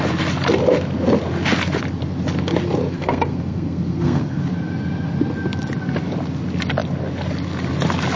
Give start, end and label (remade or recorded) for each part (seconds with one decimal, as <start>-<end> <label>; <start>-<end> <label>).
0.0-2.9 recorded; 2.9-4.4 remade; 4.4-8.2 recorded